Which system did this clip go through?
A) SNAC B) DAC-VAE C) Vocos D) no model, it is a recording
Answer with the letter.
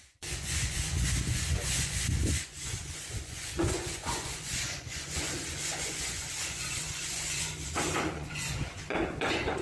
C